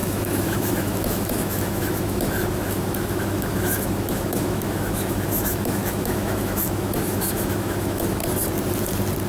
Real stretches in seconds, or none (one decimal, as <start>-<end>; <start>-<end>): 8.2-9.3